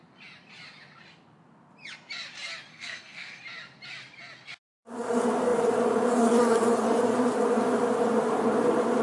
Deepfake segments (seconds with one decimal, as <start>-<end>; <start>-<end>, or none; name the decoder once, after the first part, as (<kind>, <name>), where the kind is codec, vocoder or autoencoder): 2.7-3.4 (codec, SNAC)